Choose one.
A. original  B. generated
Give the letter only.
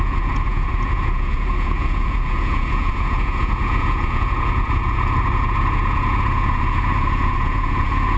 B